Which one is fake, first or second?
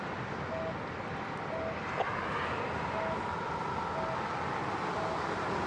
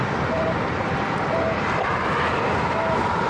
second